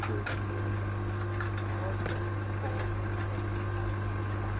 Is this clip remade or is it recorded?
recorded